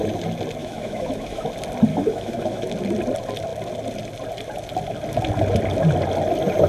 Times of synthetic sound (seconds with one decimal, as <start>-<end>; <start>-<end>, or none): 0.6-1.5; 1.9-2.7